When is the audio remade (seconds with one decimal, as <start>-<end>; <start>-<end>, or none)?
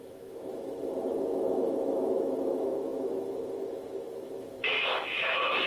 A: 0.0-5.7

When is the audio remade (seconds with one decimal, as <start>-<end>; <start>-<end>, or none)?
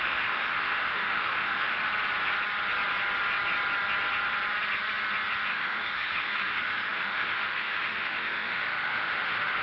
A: 0.0-1.8; 5.5-9.6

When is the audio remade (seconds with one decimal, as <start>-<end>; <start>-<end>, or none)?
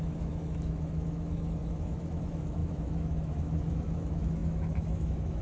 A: 0.0-5.4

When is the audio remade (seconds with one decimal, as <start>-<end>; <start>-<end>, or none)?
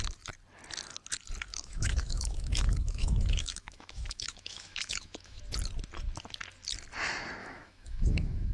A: 1.5-5.4; 7.4-8.5